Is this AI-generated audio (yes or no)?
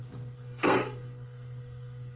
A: yes